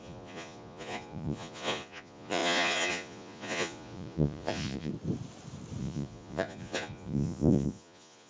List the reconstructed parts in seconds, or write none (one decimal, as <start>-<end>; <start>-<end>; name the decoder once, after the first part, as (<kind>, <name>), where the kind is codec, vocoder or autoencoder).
0.0-4.9 (vocoder, Vocos); 5.8-8.3

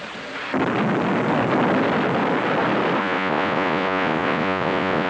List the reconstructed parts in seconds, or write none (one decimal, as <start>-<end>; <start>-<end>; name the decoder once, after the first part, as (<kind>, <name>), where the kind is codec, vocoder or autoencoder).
3.0-5.1 (vocoder, Vocos)

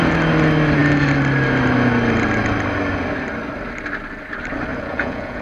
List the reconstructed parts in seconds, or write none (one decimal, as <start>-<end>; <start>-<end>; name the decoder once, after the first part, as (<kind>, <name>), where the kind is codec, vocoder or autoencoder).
4.7-5.4 (vocoder, Vocos)

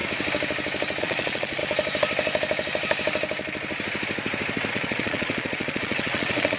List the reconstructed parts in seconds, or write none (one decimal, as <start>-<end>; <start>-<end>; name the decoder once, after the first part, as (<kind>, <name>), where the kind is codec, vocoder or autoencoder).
1.0-1.6 (vocoder, Vocos); 4.7-6.6

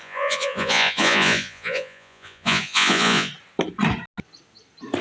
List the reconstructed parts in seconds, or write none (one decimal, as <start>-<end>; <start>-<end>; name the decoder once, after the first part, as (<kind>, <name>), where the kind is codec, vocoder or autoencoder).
0.0-3.3 (vocoder, Vocos)

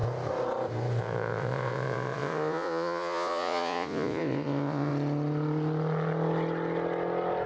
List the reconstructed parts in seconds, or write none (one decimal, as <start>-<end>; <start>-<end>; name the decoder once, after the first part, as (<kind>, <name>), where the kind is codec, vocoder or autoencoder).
1.0-4.9 (vocoder, Vocos)